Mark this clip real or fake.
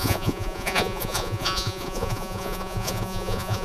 fake